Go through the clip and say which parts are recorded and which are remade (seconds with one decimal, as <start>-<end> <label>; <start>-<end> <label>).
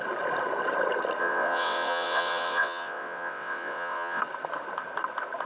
0.0-1.2 recorded; 1.2-4.2 remade; 4.2-5.5 recorded